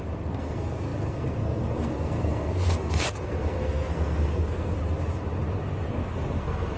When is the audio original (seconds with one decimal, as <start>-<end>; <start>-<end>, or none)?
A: 4.8-5.9